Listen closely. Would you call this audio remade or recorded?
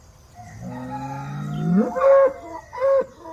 recorded